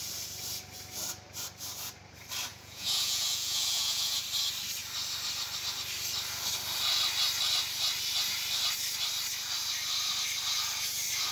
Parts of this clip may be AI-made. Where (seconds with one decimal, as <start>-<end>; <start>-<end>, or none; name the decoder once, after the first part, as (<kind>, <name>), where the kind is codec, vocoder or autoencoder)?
2.5-4.2 (vocoder, Vocos)